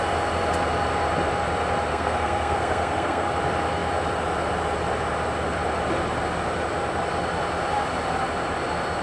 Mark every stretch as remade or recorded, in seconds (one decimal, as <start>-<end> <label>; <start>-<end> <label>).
0.0-1.9 recorded; 1.9-3.3 remade; 3.3-9.0 recorded